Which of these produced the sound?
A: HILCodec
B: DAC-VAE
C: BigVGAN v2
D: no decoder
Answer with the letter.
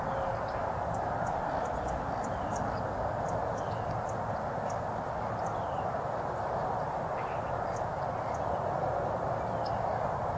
D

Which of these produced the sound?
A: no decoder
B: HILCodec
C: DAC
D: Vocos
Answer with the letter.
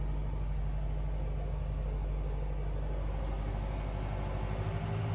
A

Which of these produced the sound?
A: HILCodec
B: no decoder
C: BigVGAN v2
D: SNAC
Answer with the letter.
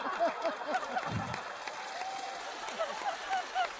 B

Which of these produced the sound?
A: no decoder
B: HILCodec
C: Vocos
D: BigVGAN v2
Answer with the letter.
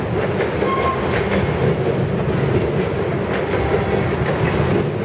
A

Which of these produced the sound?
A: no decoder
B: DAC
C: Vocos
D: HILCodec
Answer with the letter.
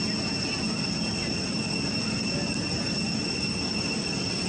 A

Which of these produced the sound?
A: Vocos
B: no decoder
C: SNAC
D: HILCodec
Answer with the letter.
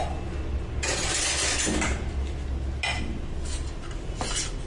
B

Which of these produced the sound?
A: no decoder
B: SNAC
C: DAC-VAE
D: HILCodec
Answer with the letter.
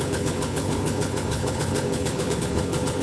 D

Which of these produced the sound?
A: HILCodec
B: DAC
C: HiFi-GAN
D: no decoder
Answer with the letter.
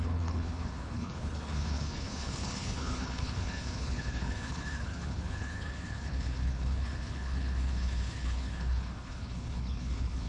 A